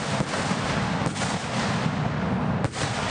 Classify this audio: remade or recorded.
recorded